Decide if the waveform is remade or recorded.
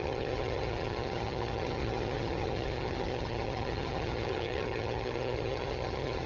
remade